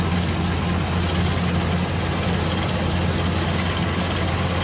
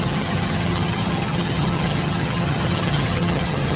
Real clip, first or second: first